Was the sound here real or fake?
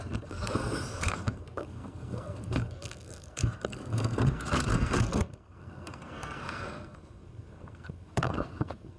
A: fake